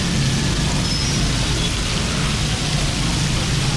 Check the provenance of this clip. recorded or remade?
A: recorded